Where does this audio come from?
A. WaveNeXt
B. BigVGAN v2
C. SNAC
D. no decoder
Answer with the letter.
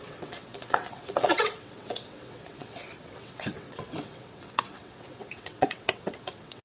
A